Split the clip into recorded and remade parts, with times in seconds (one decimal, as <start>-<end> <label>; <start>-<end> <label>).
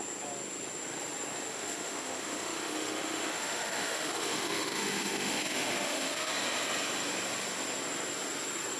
0.0-1.5 recorded; 1.5-6.3 remade; 6.3-8.8 recorded